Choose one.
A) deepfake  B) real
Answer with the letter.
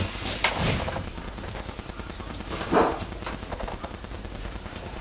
B